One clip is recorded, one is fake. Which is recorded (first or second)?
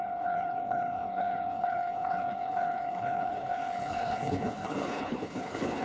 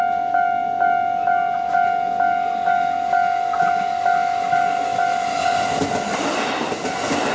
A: second